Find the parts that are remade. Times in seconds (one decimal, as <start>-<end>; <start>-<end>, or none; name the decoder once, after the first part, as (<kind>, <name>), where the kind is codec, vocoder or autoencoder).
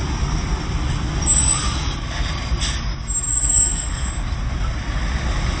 3.3-4.1 (codec, SNAC)